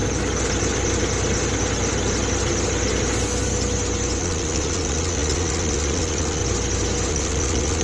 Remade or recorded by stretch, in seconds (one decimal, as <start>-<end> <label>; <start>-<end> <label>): 0.0-4.2 recorded; 4.2-6.4 remade; 6.4-7.1 recorded; 7.1-7.8 remade